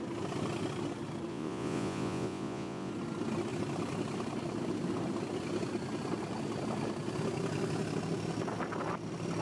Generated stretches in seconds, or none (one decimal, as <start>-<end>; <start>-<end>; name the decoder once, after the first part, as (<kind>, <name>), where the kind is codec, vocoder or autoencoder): 1.3-2.9 (vocoder, Vocos)